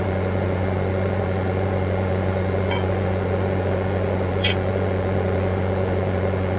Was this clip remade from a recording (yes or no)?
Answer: yes